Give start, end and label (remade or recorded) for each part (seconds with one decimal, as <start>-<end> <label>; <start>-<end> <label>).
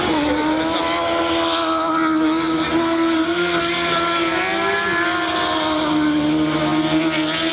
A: 0.0-2.8 recorded; 2.8-3.6 remade; 3.6-7.5 recorded